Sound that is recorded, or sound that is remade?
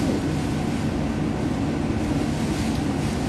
recorded